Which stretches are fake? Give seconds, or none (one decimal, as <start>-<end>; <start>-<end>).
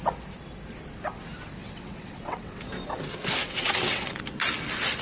1.6-2.6; 3.4-4.2